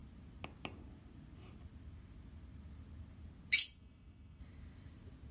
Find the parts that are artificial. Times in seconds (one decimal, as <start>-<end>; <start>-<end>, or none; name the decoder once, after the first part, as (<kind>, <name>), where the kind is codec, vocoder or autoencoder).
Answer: 3.6-4.4 (autoencoder, DAC-VAE)